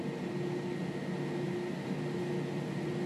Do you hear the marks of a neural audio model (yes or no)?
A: no